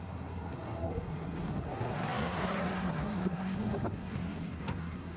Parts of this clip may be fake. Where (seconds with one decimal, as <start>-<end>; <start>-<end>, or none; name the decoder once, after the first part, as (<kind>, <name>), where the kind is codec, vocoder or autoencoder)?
0.0-5.2 (codec, SNAC)